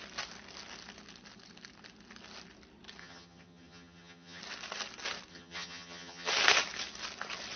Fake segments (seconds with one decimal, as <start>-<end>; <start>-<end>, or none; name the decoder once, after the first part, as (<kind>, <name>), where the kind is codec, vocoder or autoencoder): 3.0-4.4 (vocoder, HiFi-GAN); 5.3-6.3